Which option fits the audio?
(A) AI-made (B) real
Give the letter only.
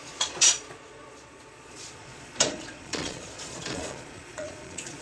A